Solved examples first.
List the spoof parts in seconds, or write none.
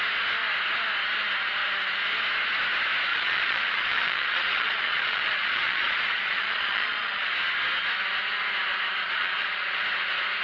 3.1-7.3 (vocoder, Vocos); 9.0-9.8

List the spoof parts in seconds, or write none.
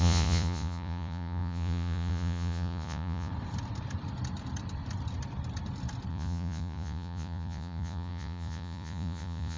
0.0-3.3 (vocoder, Vocos); 6.1-9.6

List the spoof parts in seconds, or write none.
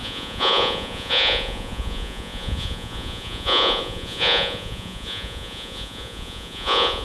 0.0-7.0 (vocoder, Vocos)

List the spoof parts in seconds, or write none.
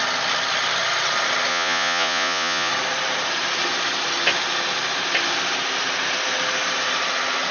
1.5-2.7 (vocoder, Vocos)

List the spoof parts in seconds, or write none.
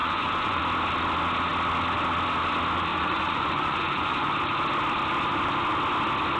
0.0-0.6 (vocoder, Vocos); 2.9-4.3